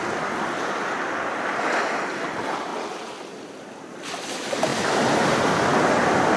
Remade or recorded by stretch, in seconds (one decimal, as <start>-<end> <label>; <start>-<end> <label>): 0.0-6.4 recorded